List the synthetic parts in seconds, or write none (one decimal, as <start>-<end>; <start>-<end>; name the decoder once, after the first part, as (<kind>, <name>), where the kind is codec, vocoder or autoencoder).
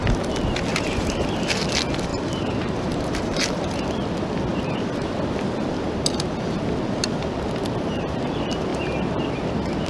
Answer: 0.7-1.5 (vocoder, BigVGAN v2); 2.1-3.7; 4.5-5.2